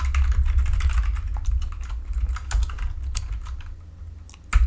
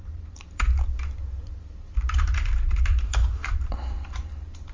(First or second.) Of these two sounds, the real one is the first